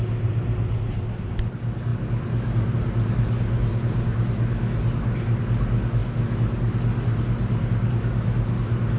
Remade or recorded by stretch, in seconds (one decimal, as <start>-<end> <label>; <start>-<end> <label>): 0.0-9.0 recorded